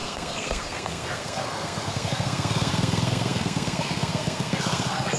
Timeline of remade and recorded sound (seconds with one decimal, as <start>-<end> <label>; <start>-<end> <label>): 0.0-5.2 remade